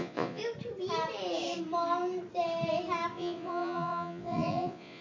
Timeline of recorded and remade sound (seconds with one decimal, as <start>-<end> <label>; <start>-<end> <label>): 0.0-0.4 remade; 0.4-3.1 recorded; 3.1-5.0 remade